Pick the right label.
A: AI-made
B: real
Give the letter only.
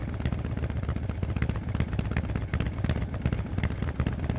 B